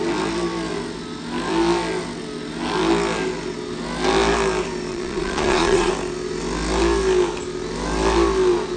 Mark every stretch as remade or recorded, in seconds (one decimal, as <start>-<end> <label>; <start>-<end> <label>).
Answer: 0.0-4.9 recorded; 4.9-5.9 remade; 5.9-8.8 recorded

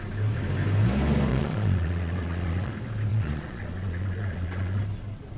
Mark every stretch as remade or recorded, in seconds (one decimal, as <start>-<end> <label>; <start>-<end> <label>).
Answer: 0.0-1.3 recorded; 1.3-2.7 remade; 2.7-3.1 recorded; 3.1-4.8 remade; 4.8-5.4 recorded